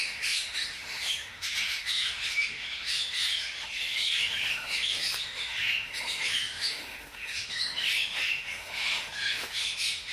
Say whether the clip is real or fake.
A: fake